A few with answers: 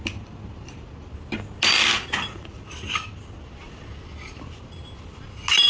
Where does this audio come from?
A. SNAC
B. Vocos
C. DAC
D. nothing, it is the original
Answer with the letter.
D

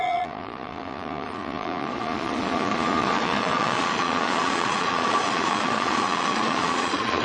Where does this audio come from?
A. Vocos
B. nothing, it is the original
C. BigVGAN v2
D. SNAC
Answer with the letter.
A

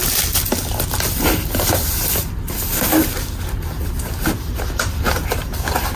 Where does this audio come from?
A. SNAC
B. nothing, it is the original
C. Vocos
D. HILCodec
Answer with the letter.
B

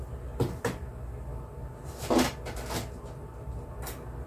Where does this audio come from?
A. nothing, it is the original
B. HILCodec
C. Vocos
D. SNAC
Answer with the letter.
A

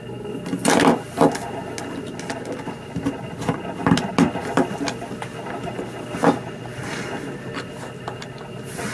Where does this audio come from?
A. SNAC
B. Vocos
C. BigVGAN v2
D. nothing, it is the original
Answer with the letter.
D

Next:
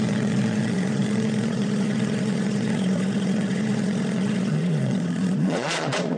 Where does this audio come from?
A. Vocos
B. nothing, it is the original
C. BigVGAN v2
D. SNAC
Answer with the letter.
A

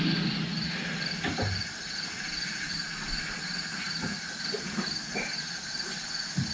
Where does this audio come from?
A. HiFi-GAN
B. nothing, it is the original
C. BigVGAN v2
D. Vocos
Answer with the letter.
B